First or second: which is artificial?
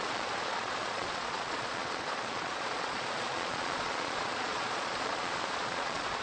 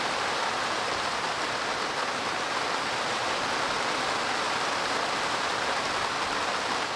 first